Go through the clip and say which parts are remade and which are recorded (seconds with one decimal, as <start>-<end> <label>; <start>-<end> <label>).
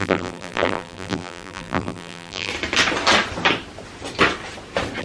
0.0-2.5 remade; 2.5-5.0 recorded